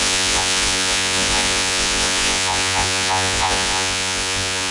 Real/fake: fake